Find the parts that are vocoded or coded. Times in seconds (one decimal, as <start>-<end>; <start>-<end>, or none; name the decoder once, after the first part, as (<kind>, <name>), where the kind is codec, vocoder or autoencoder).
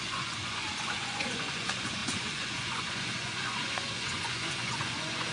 0.0-5.3 (vocoder, Vocos)